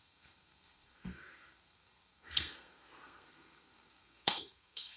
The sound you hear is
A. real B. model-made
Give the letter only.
B